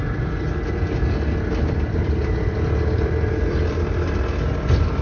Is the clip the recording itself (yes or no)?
yes